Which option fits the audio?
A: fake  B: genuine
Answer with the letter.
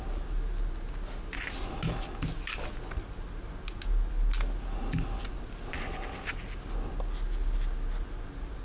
B